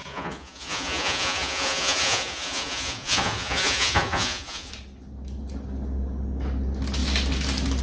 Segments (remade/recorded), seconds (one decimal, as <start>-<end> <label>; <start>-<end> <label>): 0.0-4.7 remade; 4.7-7.8 recorded